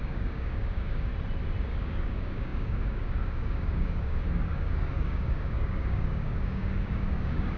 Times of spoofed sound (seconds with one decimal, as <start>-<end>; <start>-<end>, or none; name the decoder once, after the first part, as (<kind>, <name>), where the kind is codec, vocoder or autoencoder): 0.0-1.1 (codec, DAC); 1.7-7.6